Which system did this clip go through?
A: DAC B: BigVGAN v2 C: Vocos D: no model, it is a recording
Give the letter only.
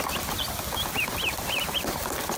D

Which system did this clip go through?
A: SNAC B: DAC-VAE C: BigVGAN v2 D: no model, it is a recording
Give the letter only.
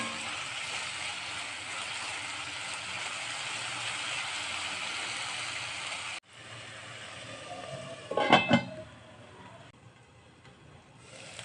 D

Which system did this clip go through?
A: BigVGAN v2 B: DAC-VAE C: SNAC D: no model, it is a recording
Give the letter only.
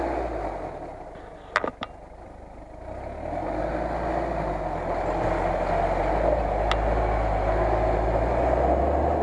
D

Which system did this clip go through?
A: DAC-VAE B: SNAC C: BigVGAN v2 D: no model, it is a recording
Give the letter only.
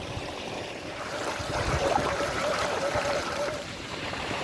C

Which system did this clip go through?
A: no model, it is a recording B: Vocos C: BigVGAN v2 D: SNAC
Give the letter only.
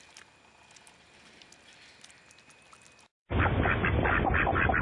A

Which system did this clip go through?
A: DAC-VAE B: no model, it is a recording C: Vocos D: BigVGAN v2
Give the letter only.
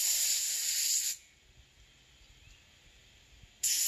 B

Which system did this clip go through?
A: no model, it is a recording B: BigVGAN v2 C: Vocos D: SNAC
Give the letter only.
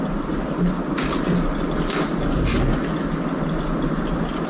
A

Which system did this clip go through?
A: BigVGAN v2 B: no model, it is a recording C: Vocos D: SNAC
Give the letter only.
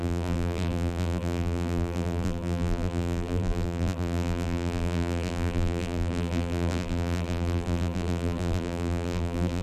A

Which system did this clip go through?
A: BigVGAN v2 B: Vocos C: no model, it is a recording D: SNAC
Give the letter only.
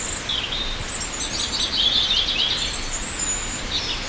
C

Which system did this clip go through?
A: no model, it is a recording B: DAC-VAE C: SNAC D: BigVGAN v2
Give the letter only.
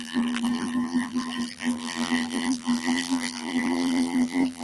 D